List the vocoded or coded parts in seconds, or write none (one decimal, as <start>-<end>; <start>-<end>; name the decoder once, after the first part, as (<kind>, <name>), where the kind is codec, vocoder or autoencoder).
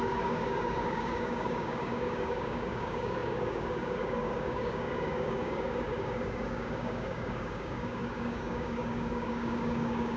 0.0-10.2 (codec, DAC)